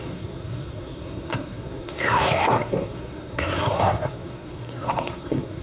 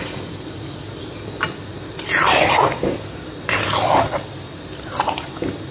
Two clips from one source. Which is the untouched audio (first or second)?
second